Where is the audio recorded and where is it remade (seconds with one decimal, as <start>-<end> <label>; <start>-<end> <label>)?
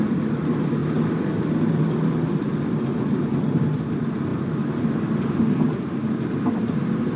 0.0-7.2 recorded